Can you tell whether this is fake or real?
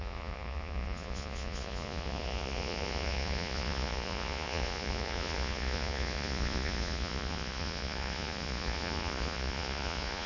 fake